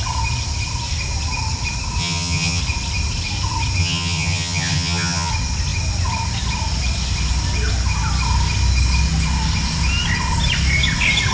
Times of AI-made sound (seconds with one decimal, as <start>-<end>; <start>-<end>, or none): 2.0-2.6; 3.8-5.3